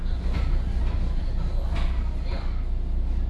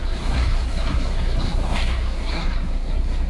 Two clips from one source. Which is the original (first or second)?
first